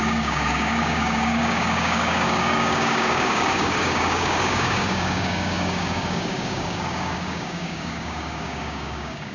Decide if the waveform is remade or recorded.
remade